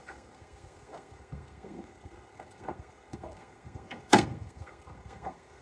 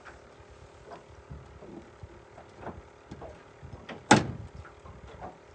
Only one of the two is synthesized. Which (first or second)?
first